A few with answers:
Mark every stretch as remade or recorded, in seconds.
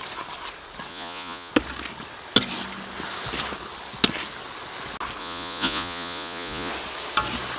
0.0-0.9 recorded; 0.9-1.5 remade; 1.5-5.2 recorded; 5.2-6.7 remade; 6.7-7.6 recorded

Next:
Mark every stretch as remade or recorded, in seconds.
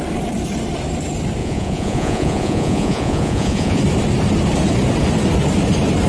0.0-1.4 recorded; 1.4-3.8 remade; 3.8-6.1 recorded